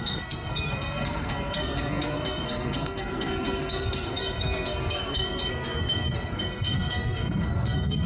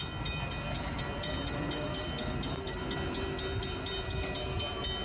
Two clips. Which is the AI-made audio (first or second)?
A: first